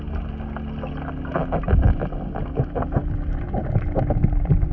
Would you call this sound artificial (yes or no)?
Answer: no